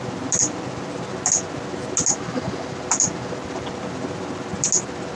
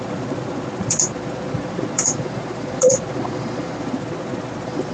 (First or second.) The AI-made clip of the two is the second